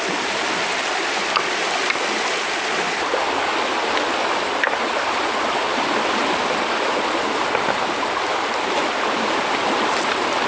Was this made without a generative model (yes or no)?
yes